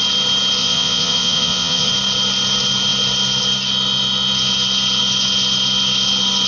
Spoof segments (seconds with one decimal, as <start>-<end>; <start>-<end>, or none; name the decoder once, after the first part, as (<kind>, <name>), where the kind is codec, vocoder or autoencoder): 0.6-1.9 (vocoder, Vocos)